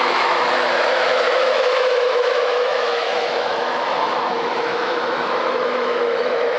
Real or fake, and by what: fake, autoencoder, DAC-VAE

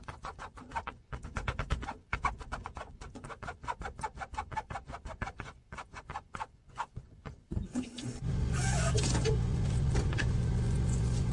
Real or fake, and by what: fake, vocoder, Vocos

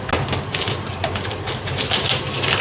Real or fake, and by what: real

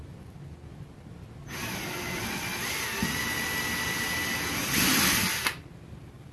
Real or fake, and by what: real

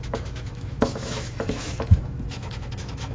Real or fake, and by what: fake, autoencoder, DAC-VAE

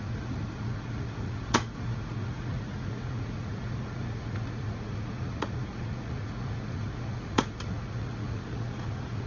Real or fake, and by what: fake, vocoder, Vocos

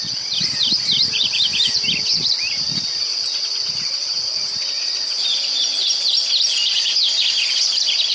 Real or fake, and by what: real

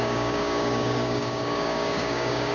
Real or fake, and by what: fake, codec, DAC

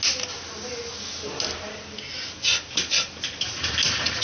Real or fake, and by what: real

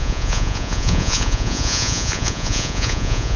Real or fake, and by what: fake, vocoder, Vocos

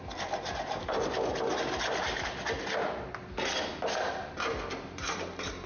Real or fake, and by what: real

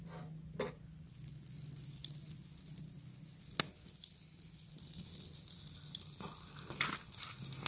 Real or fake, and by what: real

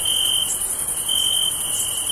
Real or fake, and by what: real